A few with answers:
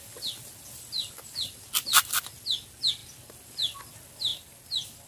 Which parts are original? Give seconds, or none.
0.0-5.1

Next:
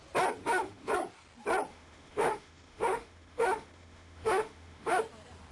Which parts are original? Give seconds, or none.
0.0-0.4; 0.9-1.7; 5.0-5.5